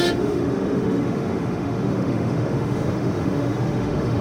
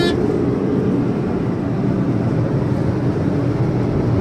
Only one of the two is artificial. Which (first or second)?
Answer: first